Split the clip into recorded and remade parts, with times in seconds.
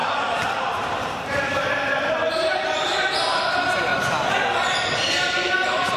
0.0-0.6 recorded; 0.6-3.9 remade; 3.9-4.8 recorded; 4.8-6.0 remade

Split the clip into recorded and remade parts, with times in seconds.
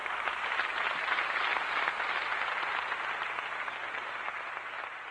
0.0-5.1 recorded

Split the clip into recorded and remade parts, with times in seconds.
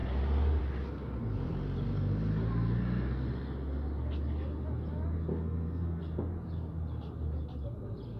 0.0-5.3 recorded; 5.3-6.0 remade; 6.0-8.2 recorded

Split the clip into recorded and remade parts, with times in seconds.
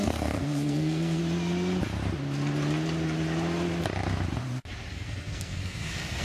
0.0-1.2 remade; 1.2-4.9 recorded; 4.9-6.2 remade